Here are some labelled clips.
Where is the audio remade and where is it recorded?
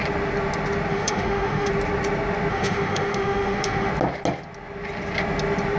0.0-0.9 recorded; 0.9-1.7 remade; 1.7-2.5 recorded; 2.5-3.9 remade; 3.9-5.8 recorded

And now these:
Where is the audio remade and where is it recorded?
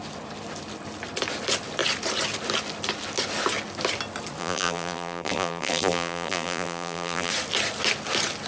0.0-4.4 recorded; 4.4-7.3 remade; 7.3-8.5 recorded